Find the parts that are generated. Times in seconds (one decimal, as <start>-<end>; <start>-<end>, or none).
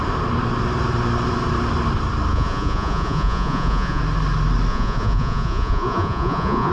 2.3-4.0; 4.7-6.7